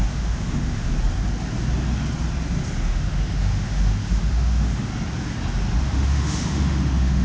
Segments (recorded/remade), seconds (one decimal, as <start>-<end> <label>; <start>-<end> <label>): 0.0-0.9 remade; 0.9-2.8 recorded; 2.8-4.9 remade; 4.9-5.8 recorded; 5.8-7.2 remade